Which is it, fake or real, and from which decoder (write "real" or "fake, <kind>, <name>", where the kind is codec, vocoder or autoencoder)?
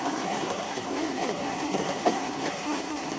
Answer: fake, codec, SNAC